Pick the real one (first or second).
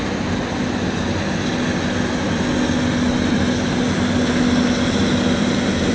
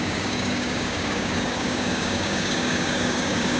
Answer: first